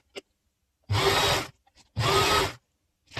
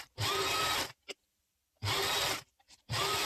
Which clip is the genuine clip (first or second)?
first